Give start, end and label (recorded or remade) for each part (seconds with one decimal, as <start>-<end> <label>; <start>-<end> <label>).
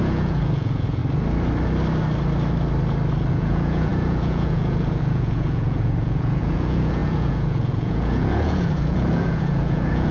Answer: 0.0-1.0 remade; 1.0-3.3 recorded; 3.3-10.1 remade